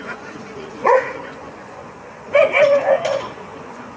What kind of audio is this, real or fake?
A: fake